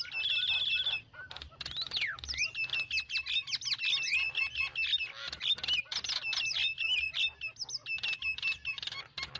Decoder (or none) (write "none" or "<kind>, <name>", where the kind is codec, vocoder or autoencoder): none